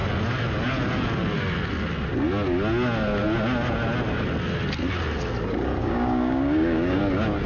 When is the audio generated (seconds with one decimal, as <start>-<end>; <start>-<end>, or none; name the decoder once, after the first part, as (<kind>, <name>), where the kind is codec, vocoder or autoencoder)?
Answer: 5.8-7.0 (codec, DAC)